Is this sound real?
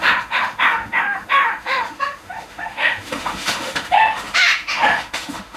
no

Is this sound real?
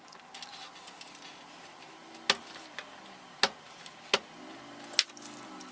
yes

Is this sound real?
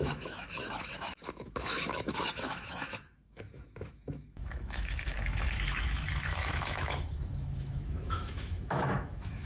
no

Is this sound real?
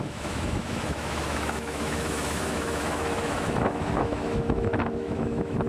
no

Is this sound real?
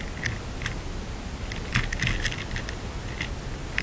yes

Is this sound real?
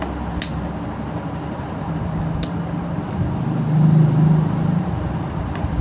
yes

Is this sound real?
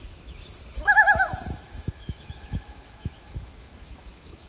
no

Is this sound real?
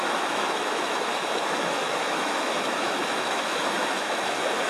no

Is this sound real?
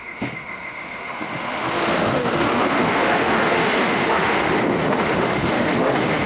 no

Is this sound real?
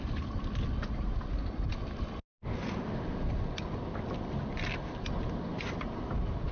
yes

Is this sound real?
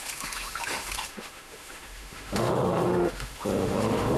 no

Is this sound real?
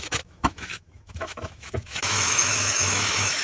no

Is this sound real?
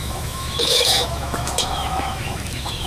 no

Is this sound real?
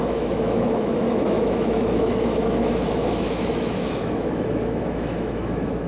no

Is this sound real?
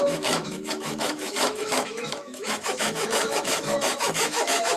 no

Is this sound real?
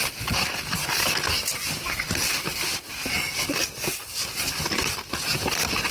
yes